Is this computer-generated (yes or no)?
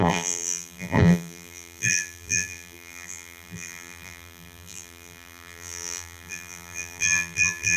yes